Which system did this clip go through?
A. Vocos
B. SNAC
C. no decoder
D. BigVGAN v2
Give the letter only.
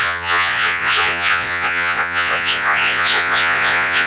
A